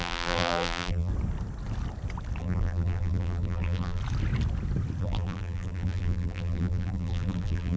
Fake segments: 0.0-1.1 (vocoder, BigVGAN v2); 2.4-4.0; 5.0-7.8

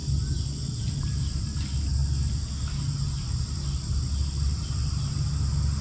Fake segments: none

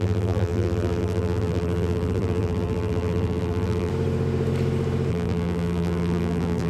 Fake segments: 0.0-3.9 (vocoder, BigVGAN v2); 5.1-6.7

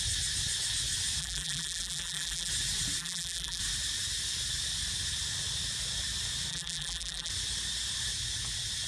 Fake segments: 1.2-2.5 (vocoder, BigVGAN v2); 3.0-3.6; 6.5-7.3